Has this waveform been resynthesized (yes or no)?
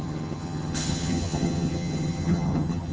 yes